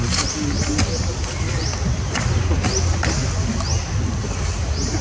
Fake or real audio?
real